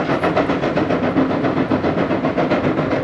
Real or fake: real